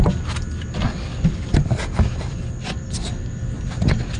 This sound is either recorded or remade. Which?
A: recorded